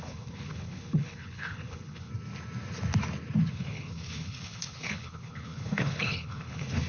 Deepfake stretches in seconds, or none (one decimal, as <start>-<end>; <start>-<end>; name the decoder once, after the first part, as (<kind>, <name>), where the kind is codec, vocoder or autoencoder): 0.0-2.1 (codec, HILCodec); 3.5-6.9